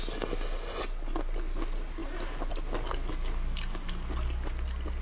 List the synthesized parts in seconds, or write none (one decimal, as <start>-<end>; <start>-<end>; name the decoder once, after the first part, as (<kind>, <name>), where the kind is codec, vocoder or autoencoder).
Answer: none